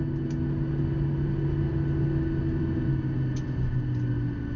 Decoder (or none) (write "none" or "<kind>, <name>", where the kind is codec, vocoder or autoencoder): none